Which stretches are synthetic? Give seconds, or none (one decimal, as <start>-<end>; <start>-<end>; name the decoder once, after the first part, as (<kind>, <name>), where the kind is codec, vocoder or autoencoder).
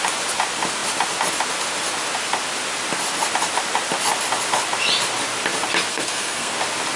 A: 5.9-6.5 (codec, SNAC)